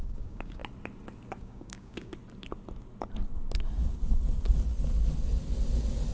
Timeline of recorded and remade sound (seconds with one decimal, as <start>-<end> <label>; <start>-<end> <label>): 0.0-0.6 remade; 0.6-1.4 recorded; 1.4-2.1 remade; 2.1-6.1 recorded